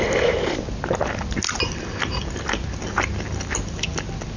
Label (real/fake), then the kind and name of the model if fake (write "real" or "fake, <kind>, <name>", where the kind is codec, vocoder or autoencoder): real